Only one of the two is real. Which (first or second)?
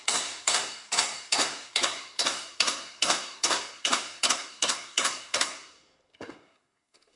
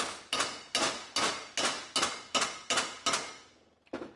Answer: second